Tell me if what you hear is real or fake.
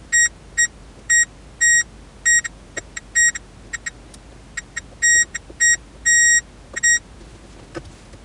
real